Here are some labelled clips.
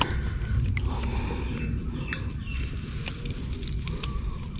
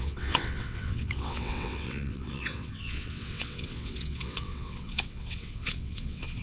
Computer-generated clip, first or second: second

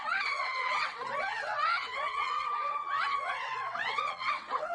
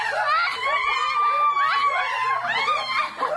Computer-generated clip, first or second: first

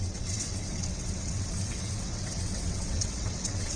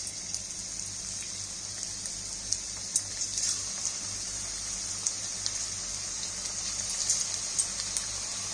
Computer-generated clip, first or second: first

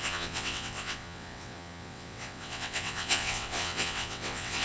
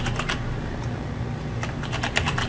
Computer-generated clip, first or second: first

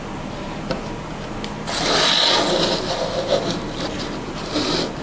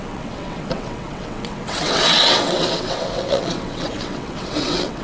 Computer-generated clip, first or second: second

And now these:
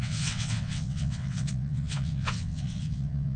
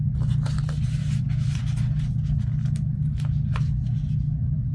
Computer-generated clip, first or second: first